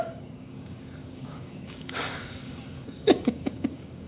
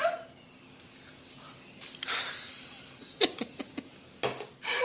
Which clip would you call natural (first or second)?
second